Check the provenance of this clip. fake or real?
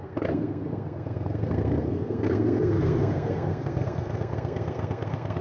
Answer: fake